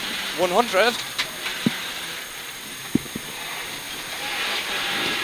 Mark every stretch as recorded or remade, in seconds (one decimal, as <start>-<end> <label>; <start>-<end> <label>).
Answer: 0.0-1.5 recorded; 1.5-2.8 remade; 2.8-5.2 recorded